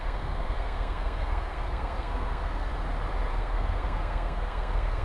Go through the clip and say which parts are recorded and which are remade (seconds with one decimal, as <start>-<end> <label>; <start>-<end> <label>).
0.0-2.7 remade; 2.7-3.3 recorded; 3.3-5.0 remade